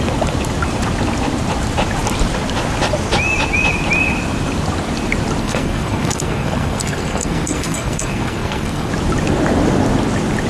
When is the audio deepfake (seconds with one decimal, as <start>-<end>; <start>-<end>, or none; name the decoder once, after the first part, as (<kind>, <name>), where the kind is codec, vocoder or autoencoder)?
5.4-8.9 (codec, SNAC)